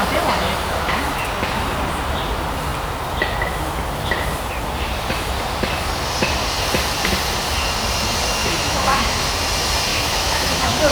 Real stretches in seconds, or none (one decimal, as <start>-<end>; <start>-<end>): 0.0-8.4; 9.0-9.9